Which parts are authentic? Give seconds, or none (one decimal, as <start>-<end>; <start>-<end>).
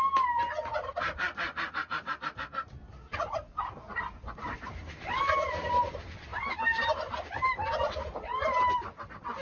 none